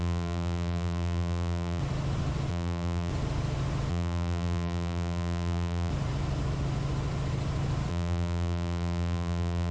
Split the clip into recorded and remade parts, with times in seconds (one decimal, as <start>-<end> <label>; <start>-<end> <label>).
0.0-1.8 remade; 1.8-2.5 recorded; 2.5-3.1 remade; 3.1-3.9 recorded; 3.9-5.9 remade; 5.9-7.9 recorded; 7.9-9.7 remade